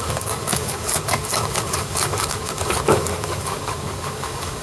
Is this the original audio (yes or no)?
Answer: no